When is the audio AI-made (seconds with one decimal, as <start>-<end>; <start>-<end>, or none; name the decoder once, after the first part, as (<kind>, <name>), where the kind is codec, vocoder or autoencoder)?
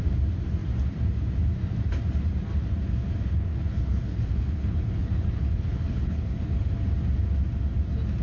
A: 3.3-6.7 (codec, HILCodec)